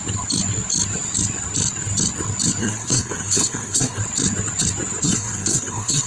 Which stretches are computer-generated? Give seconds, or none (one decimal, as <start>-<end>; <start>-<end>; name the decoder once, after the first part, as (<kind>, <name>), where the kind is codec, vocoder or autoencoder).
2.6-4.0 (codec, SNAC); 5.0-6.1